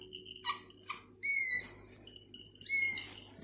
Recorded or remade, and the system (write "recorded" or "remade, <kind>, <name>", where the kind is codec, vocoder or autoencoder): recorded